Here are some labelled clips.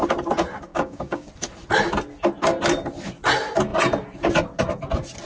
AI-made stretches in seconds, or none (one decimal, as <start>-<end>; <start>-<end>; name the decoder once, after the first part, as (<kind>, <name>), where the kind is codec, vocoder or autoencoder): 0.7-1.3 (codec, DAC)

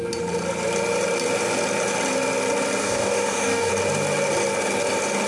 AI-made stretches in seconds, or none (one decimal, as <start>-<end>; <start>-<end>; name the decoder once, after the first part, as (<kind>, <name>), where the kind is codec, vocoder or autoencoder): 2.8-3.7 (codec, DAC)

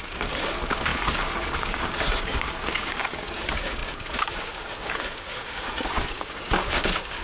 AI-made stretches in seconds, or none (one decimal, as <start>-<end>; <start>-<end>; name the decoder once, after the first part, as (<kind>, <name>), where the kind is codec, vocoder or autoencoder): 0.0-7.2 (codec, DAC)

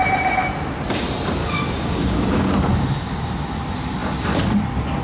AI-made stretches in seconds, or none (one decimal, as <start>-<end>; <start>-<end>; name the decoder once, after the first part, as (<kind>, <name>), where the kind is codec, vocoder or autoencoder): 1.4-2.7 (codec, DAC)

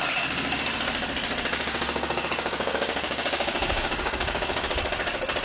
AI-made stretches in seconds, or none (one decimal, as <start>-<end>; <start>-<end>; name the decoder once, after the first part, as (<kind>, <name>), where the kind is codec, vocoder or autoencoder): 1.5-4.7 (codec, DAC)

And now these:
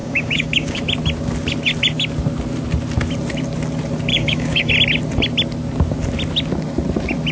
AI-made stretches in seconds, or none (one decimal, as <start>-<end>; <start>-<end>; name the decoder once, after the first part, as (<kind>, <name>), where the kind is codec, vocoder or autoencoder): 0.0-0.8 (codec, DAC); 4.1-4.7

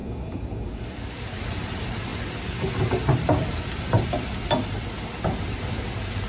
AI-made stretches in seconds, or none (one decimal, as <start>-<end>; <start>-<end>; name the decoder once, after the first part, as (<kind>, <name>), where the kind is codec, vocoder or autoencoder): 0.0-0.8 (codec, DAC)

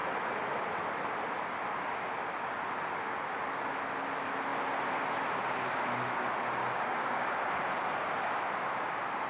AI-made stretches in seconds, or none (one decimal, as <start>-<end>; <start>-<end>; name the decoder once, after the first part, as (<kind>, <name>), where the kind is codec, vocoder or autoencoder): 6.6-7.4 (codec, DAC)